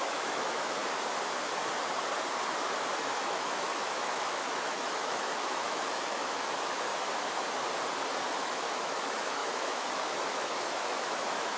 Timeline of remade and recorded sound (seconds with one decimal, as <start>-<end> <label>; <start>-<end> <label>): 0.0-0.8 remade; 0.8-3.0 recorded; 3.0-6.9 remade; 6.9-8.4 recorded; 8.4-11.6 remade